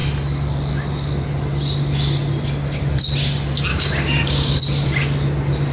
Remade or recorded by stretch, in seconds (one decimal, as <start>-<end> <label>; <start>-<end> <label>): 0.0-3.7 recorded; 3.7-4.6 remade; 4.6-5.7 recorded